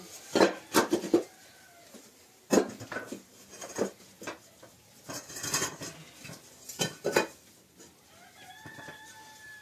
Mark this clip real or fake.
real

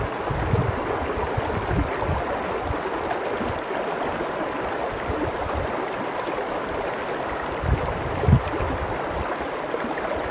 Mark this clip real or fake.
real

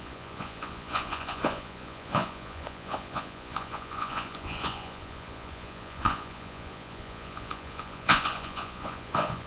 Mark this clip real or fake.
fake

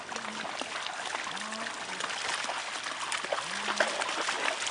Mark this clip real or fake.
real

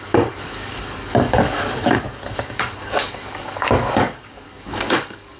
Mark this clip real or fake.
fake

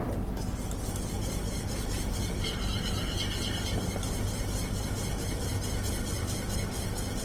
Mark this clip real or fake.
real